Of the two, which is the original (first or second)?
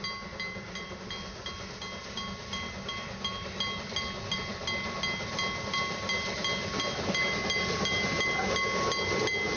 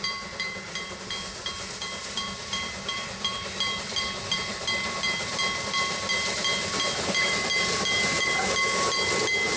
first